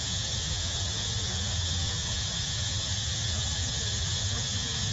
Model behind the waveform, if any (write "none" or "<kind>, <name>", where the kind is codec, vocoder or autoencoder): vocoder, Vocos